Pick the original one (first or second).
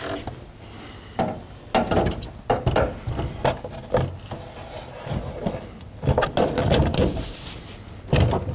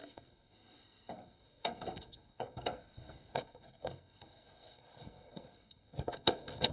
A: first